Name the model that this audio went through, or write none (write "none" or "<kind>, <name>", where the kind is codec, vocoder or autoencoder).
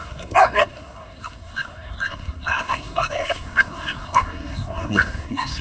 codec, SNAC